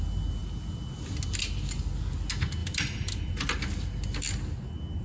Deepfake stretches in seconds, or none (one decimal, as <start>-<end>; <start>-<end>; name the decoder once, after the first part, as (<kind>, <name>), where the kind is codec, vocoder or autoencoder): 2.6-3.3 (vocoder, BigVGAN v2)

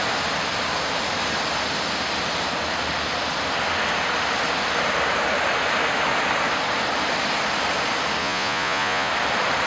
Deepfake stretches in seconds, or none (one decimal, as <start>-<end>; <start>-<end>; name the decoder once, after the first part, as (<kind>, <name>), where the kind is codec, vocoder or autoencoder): 8.2-9.1 (vocoder, Vocos)

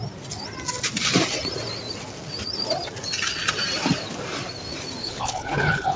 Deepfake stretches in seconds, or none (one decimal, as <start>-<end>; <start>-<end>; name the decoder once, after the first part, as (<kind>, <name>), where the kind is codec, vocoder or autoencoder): 5.0-6.0 (codec, HILCodec)